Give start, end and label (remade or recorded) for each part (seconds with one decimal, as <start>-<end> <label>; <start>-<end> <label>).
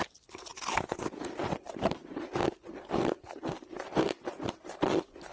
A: 0.0-5.3 recorded